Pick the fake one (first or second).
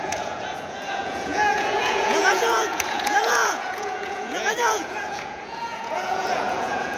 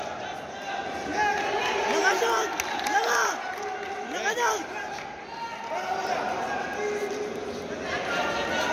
first